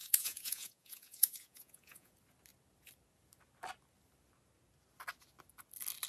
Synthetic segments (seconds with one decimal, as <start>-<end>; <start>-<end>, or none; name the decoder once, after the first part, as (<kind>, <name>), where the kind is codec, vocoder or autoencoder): 0.0-2.1 (vocoder, Vocos)